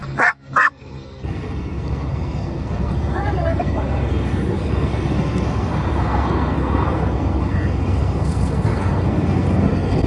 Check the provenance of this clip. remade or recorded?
remade